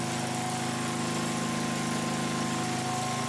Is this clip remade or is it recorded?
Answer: recorded